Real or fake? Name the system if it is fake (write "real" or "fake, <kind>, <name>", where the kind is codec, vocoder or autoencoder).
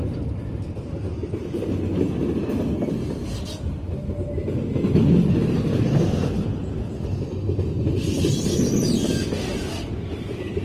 real